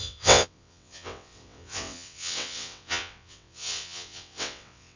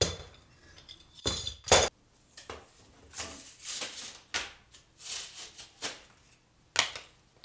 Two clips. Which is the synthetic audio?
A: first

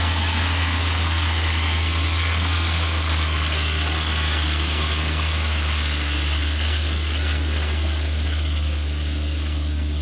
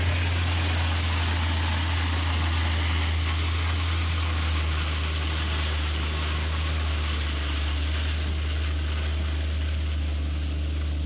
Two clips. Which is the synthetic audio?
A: first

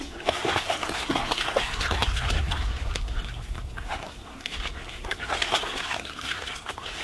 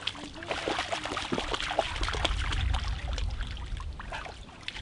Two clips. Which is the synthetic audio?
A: first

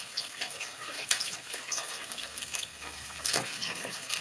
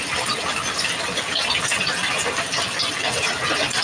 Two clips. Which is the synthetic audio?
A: first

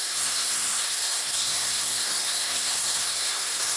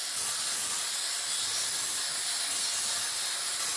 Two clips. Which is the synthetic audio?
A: first